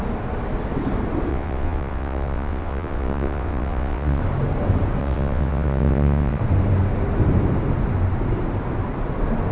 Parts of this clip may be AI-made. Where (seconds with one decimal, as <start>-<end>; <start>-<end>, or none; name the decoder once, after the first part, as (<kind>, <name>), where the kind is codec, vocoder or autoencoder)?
1.3-4.2 (vocoder, WaveNeXt); 5.0-6.4